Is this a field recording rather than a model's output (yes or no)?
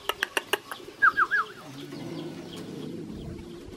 yes